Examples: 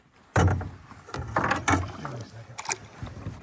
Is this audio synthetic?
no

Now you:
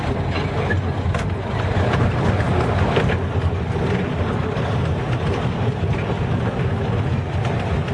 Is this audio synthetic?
no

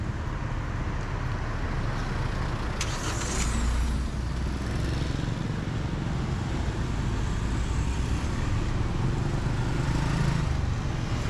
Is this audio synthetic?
no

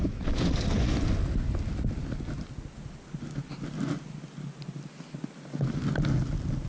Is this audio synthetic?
no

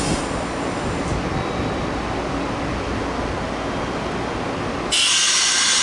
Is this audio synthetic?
no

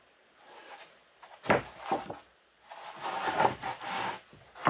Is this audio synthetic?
no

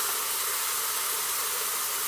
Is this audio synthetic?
no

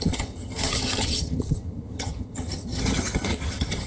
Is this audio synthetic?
yes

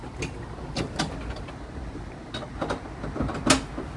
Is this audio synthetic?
no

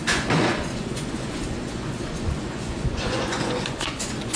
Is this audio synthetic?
yes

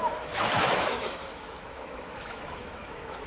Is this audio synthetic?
yes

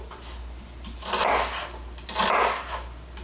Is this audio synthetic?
no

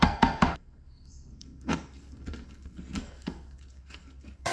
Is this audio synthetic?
yes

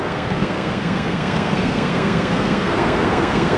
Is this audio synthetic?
yes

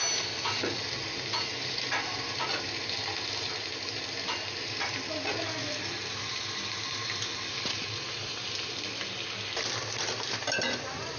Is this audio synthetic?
no